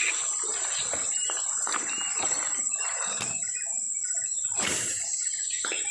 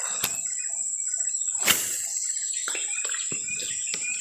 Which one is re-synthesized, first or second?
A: first